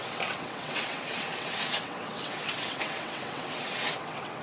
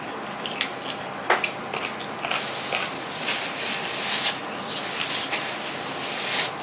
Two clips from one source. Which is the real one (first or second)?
second